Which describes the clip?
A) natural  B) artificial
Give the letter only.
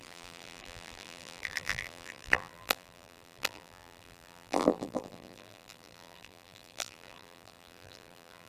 B